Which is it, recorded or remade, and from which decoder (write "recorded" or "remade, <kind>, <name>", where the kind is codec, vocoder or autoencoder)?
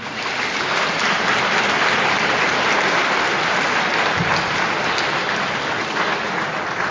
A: recorded